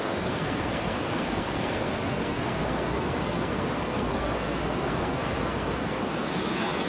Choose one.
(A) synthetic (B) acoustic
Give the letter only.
A